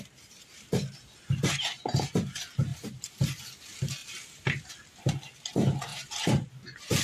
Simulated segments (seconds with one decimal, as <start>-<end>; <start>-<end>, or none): 2.7-3.2; 4.0-4.7; 5.9-6.5